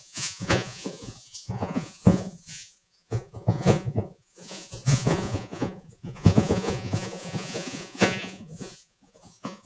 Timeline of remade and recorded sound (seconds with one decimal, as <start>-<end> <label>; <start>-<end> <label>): 0.0-9.7 remade

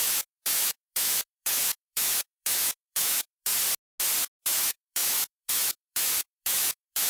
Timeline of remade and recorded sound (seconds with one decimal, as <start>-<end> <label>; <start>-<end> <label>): 0.0-3.5 remade; 3.5-4.4 recorded; 4.4-7.1 remade

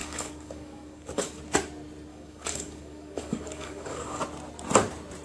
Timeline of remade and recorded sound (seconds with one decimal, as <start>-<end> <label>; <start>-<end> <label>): 0.0-1.4 remade; 1.4-2.1 recorded; 2.1-4.2 remade; 4.2-5.2 recorded

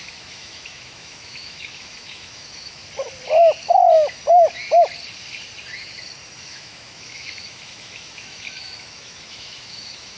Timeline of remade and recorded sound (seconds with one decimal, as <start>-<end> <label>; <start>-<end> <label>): 0.0-2.8 remade; 2.8-6.4 recorded; 6.4-10.2 remade

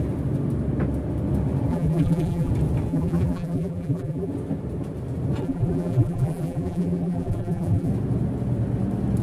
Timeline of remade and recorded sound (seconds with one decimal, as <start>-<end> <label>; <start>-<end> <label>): 0.0-1.7 recorded; 1.7-2.5 remade; 2.5-2.9 recorded; 2.9-4.3 remade; 4.3-5.4 recorded; 5.4-7.9 remade; 7.9-9.2 recorded

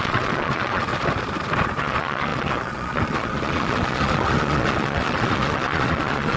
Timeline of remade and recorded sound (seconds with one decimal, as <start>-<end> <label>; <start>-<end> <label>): 0.0-0.9 remade; 0.9-1.8 recorded; 1.8-6.4 remade